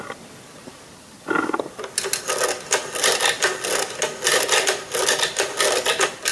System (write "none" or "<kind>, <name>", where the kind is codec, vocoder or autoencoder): none